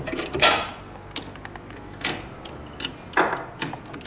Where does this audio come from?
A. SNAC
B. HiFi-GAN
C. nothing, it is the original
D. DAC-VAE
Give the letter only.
C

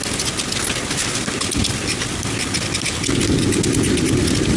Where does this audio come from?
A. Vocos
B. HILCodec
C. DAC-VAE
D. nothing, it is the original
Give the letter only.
D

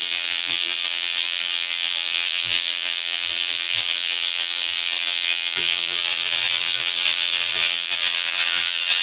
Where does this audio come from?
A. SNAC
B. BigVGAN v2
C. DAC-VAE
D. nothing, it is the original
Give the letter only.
B